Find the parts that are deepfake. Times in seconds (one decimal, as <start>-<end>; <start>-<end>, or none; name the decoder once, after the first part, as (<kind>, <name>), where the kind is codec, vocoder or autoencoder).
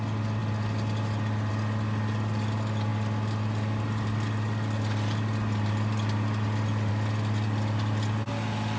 none